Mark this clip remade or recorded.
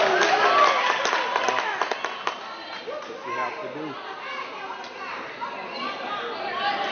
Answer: recorded